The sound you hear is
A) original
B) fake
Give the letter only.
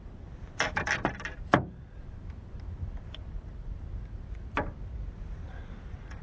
A